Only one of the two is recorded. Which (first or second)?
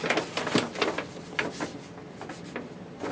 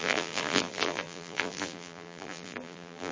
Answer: first